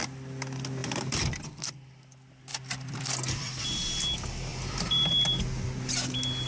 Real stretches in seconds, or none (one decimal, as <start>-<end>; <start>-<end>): 0.0-0.8; 2.0-2.5; 3.6-4.5; 5.1-6.5